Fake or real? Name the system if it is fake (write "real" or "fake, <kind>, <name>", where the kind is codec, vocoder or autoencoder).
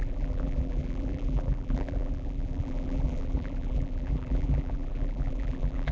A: fake, vocoder, BigVGAN v2